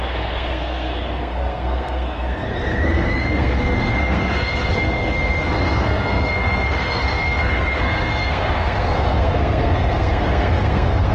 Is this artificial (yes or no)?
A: yes